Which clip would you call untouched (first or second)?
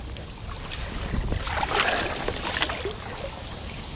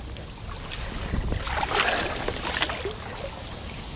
second